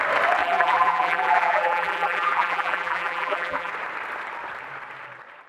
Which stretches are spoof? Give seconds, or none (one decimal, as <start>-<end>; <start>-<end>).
0.4-3.7